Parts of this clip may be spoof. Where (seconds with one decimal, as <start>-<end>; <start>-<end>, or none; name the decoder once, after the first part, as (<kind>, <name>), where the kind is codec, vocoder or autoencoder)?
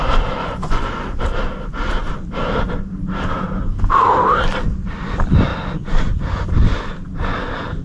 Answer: 0.4-1.2 (vocoder, Vocos)